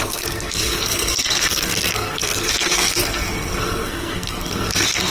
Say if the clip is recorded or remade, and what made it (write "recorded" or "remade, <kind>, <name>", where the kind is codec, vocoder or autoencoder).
remade, codec, SNAC